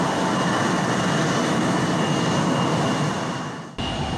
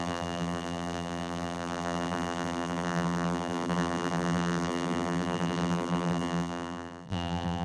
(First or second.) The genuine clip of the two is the first